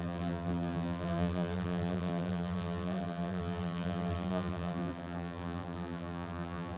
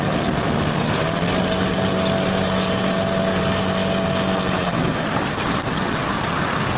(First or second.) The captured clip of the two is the second